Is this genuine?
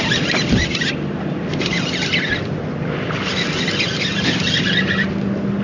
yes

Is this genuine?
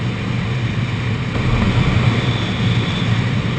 yes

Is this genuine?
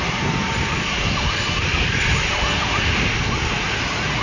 yes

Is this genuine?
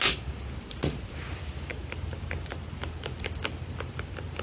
yes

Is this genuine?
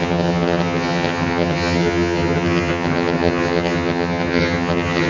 no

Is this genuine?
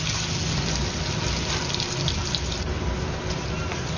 yes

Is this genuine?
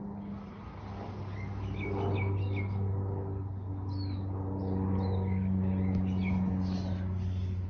yes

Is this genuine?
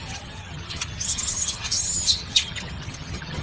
no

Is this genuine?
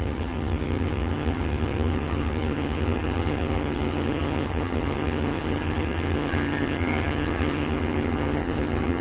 no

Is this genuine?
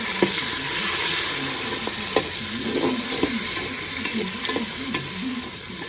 yes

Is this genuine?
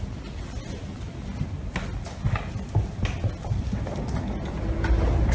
yes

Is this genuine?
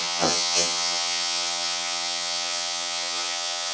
no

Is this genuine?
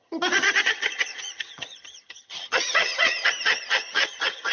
no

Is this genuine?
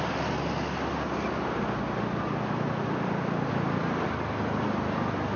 yes